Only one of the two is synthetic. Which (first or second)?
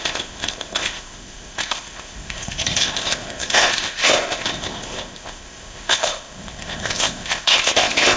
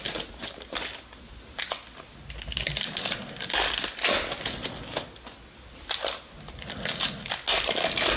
first